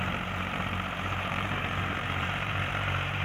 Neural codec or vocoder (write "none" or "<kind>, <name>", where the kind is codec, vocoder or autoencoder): vocoder, BigVGAN v2